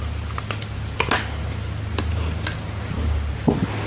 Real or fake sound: real